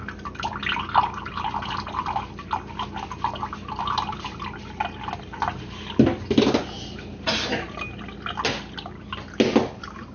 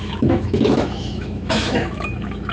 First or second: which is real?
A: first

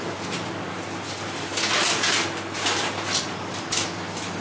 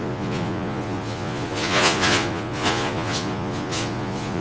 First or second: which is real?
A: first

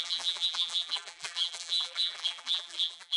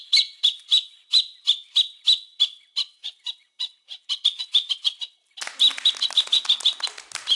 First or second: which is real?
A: second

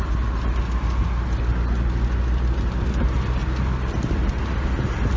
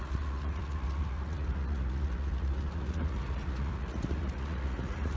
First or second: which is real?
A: first